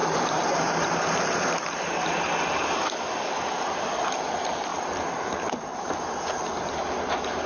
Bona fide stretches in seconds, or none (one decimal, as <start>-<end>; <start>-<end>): 2.2-4.7; 5.9-7.5